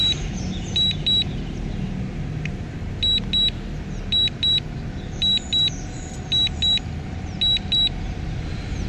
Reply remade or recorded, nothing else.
recorded